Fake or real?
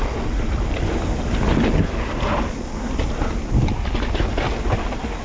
real